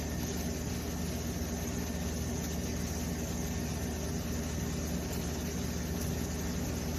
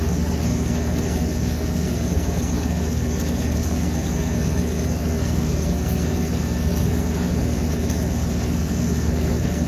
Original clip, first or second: first